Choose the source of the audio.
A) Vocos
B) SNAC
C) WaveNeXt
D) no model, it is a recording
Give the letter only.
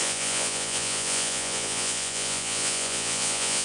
A